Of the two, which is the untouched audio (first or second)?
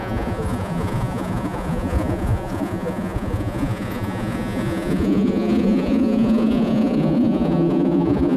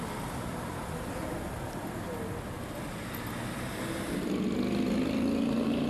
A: second